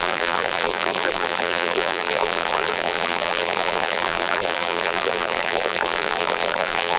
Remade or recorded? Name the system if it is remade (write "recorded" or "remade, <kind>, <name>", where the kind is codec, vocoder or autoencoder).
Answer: remade, vocoder, BigVGAN v2